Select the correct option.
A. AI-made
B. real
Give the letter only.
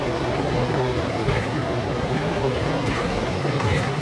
A